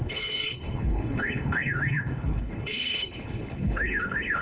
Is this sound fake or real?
fake